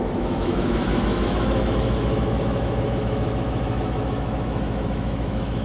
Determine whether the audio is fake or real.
fake